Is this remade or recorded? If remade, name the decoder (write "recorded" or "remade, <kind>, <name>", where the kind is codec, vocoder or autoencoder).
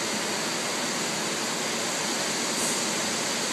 recorded